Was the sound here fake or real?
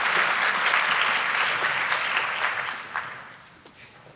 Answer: real